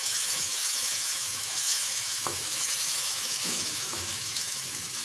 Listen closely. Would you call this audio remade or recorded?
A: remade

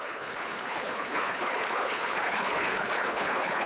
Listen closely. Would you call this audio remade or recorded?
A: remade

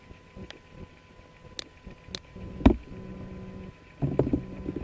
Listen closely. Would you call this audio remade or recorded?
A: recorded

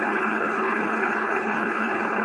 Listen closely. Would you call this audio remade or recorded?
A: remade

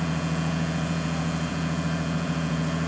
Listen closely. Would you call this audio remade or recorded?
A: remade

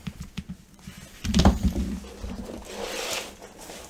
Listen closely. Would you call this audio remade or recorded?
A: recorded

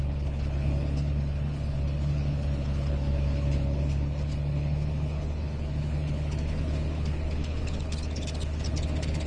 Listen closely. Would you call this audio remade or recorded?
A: remade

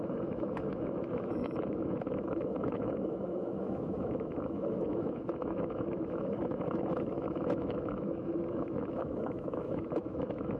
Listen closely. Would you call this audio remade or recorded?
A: remade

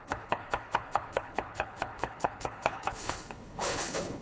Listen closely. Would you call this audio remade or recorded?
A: remade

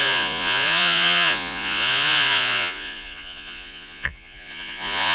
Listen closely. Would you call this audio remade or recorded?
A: remade